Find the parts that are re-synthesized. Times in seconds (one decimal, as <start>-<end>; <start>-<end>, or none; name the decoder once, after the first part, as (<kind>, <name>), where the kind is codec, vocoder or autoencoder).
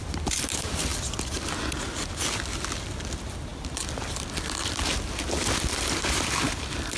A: none